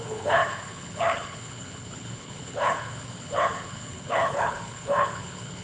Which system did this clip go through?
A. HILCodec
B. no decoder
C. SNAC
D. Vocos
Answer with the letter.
A